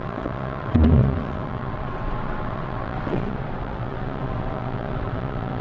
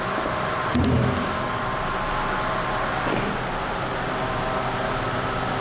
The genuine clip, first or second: second